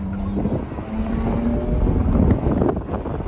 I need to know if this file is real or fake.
real